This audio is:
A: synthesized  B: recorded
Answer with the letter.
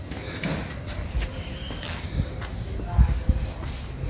B